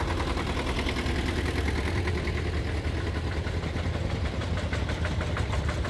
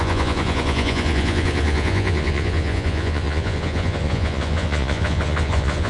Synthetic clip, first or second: second